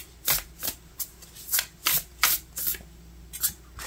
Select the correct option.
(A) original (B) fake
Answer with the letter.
A